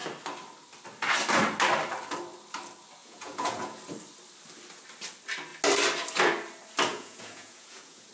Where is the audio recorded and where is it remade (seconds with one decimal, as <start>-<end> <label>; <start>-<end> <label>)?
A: 0.0-3.0 recorded; 3.0-3.8 remade; 3.8-6.9 recorded; 6.9-8.1 remade